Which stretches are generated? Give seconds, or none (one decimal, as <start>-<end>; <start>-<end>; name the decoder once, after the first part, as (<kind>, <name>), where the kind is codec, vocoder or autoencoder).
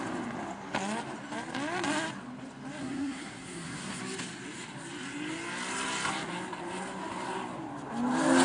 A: 2.8-4.0 (codec, SNAC)